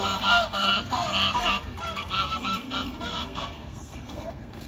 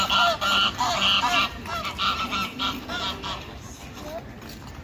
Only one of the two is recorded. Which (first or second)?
second